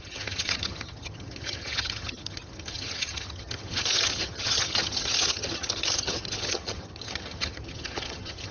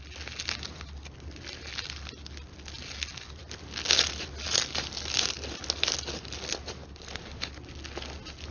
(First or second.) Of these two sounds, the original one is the second